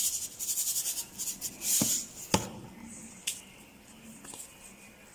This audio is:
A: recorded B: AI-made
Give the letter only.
A